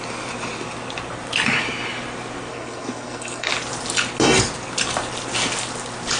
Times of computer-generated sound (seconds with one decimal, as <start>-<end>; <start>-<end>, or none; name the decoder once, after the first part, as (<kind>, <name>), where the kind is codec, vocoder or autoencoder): 2.5-3.5 (codec, SNAC)